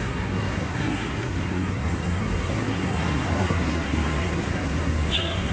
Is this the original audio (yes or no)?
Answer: no